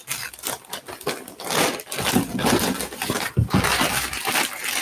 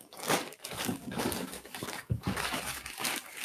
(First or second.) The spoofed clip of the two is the second